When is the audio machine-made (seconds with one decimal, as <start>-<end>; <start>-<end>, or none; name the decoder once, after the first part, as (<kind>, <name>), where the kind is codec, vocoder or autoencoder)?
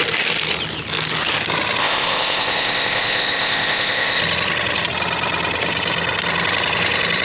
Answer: 1.8-4.2 (codec, ZipCodec)